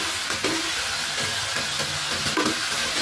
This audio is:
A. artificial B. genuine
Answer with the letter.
B